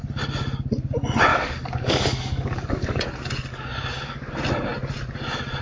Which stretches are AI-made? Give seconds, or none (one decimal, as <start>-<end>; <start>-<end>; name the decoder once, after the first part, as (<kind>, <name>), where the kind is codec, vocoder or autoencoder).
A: 1.3-3.0 (codec, DAC); 3.5-4.3